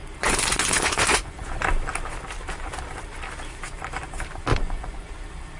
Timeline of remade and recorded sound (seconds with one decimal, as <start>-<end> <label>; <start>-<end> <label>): 0.0-1.5 remade; 1.5-4.5 recorded; 4.5-5.1 remade; 5.1-5.6 recorded